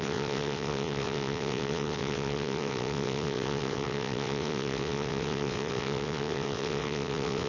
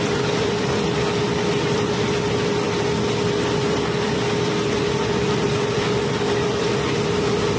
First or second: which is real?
second